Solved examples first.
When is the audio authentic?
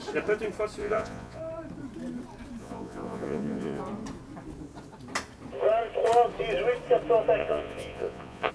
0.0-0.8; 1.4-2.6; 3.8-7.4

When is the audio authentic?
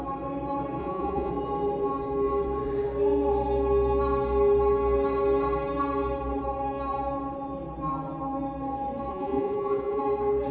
0.0-0.8; 1.3-9.1; 10.0-10.5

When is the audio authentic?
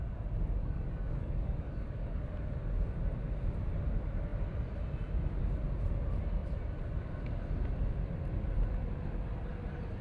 0.0-0.6; 2.3-10.0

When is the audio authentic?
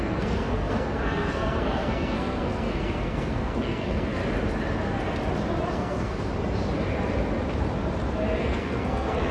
4.2-5.7; 6.3-8.4